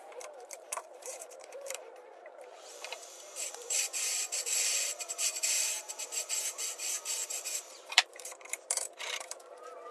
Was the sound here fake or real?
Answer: fake